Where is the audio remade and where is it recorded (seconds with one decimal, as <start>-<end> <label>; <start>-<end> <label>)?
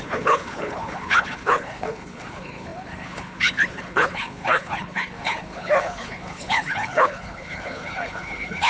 0.0-8.7 remade